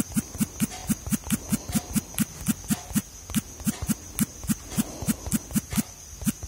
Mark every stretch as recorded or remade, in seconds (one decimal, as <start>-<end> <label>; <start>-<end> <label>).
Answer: 0.0-6.5 recorded